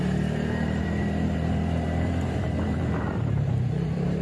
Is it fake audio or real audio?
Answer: fake